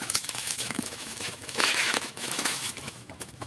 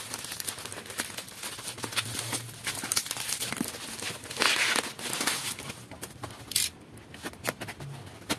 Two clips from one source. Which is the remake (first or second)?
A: first